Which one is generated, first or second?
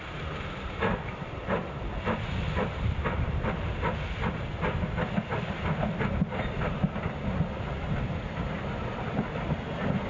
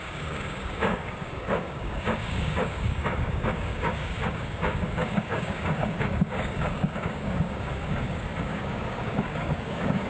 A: second